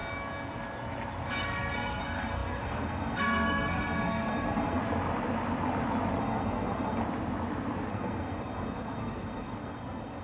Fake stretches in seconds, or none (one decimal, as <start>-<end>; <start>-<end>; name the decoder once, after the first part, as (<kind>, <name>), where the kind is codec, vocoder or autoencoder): 1.4-4.8 (codec, SNAC); 6.2-7.0; 7.9-10.2